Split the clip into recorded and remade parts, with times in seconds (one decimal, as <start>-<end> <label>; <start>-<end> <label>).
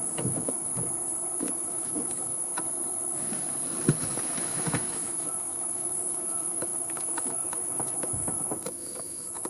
0.0-0.7 remade; 0.7-1.4 recorded; 1.4-2.5 remade; 2.5-4.4 recorded; 4.4-9.5 remade